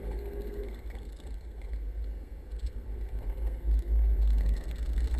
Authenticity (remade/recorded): remade